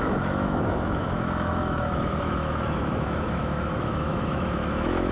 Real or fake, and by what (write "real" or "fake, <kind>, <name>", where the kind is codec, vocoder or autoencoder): fake, autoencoder, DAC-VAE